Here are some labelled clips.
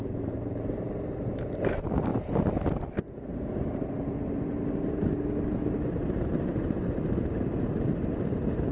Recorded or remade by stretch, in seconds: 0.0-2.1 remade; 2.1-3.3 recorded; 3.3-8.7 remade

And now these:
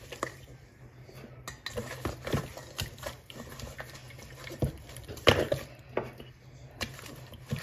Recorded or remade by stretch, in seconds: 0.0-4.0 recorded; 4.0-5.8 remade; 5.8-7.6 recorded

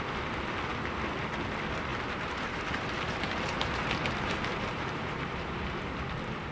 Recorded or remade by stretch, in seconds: 0.0-1.9 recorded; 1.9-5.6 remade; 5.6-6.5 recorded